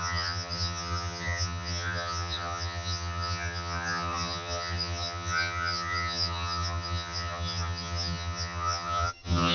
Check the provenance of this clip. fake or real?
fake